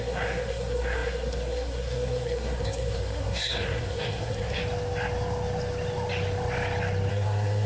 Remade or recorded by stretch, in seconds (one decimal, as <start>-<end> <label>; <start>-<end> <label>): 0.0-4.6 remade; 4.6-7.1 recorded; 7.1-7.7 remade